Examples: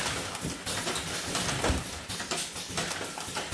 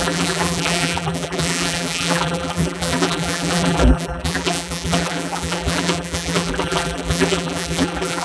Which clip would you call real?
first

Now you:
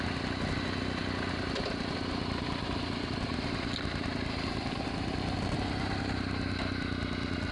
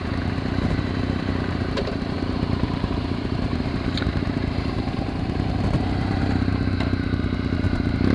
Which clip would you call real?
first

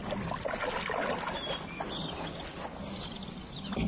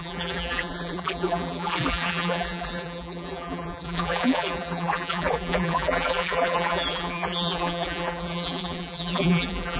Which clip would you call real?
first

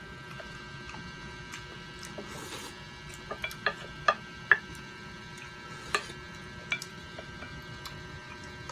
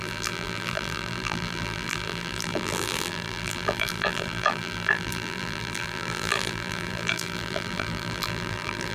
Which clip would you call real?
first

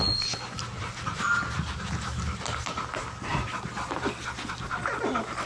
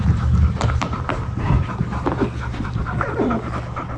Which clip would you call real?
first